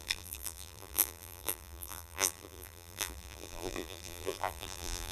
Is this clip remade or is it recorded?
remade